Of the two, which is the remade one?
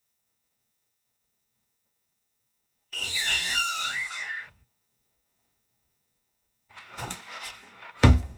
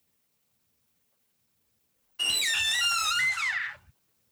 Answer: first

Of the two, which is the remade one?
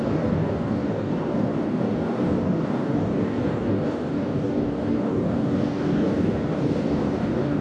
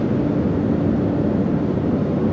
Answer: first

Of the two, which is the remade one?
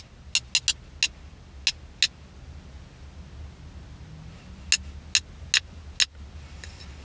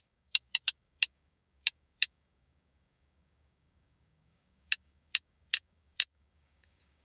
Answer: second